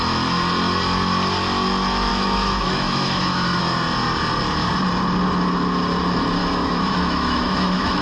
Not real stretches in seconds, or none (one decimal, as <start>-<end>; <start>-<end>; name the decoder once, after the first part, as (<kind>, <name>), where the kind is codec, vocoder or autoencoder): 2.1-3.6 (autoencoder, DAC-VAE); 6.4-8.0